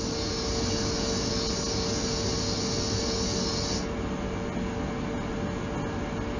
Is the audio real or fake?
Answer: real